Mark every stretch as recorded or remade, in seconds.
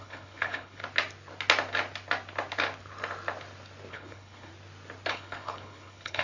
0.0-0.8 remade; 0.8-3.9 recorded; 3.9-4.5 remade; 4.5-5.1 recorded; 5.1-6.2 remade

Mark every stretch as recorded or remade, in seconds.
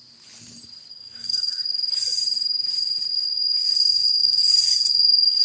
0.0-0.9 recorded; 0.9-1.6 remade; 1.6-3.6 recorded; 3.6-4.4 remade; 4.4-5.4 recorded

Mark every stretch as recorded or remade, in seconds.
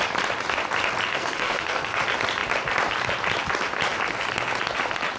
0.0-1.1 recorded; 1.1-2.0 remade; 2.0-5.2 recorded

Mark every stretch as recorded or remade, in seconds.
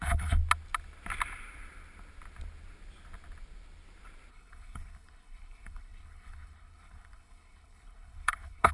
0.0-0.4 remade; 0.4-4.3 recorded; 4.3-8.7 remade